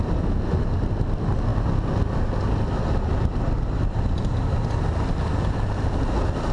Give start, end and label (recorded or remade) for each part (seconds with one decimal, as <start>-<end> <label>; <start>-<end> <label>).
0.0-6.5 recorded